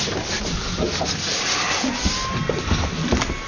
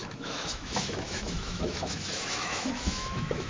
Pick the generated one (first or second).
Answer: second